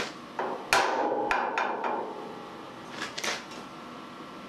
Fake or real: real